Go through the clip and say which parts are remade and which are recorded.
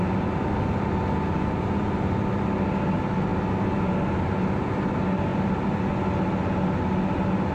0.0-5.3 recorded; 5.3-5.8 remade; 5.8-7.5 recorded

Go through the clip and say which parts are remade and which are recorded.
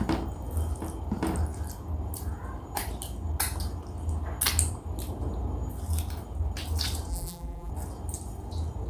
0.0-7.1 recorded; 7.1-7.7 remade; 7.7-8.9 recorded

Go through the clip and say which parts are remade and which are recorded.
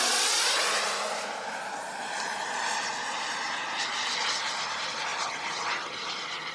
0.0-2.9 remade; 2.9-3.8 recorded; 3.8-6.5 remade